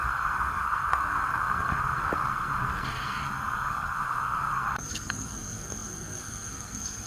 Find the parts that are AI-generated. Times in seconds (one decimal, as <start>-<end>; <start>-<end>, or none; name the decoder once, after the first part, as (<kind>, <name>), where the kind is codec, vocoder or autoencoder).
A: 0.0-7.1 (codec, SNAC)